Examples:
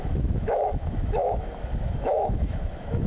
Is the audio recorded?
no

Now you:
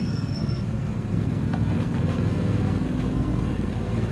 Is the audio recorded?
no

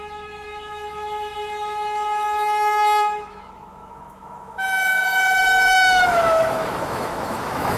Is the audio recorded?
no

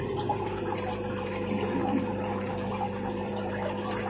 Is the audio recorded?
no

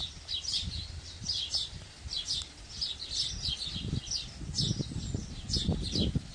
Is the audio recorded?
yes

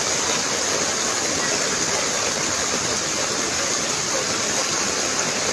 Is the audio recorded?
yes